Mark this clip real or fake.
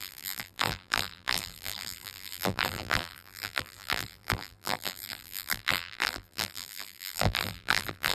fake